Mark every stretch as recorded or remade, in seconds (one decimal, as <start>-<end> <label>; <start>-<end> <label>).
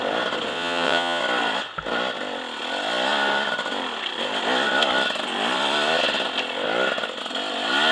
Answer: 0.0-0.5 recorded; 0.5-1.2 remade; 1.2-7.9 recorded